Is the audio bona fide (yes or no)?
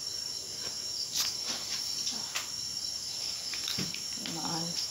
yes